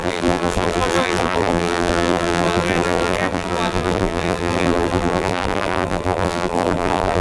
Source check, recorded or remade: remade